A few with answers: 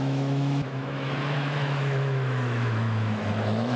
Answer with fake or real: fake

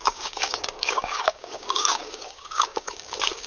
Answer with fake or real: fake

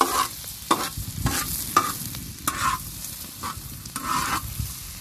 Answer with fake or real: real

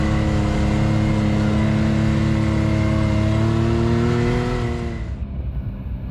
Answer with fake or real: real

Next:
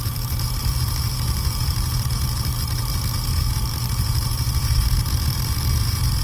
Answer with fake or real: fake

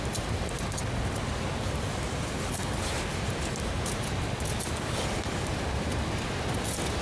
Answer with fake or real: real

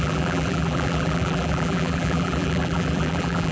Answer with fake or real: fake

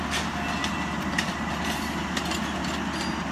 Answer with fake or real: real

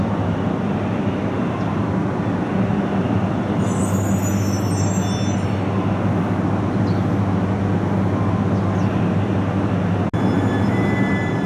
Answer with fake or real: real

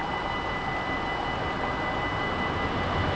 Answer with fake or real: real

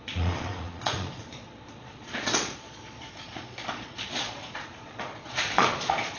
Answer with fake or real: fake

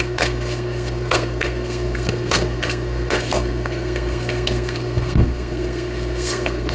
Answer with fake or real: fake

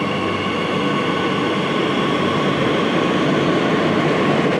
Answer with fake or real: real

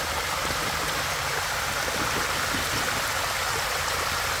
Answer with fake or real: real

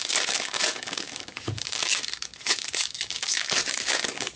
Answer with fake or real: fake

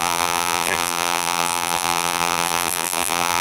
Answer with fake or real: fake